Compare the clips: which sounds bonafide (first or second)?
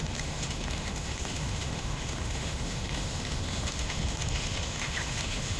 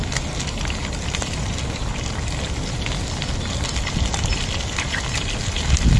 second